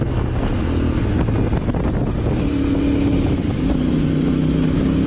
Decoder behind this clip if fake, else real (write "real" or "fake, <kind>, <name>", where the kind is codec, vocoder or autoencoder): real